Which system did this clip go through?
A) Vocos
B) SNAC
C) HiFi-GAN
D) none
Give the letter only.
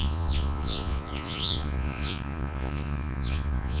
A